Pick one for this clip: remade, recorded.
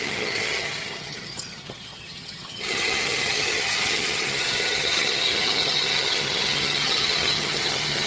remade